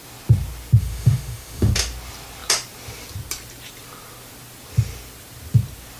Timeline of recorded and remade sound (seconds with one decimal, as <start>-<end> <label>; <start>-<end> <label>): 0.0-0.8 recorded; 0.8-1.7 remade; 1.7-6.0 recorded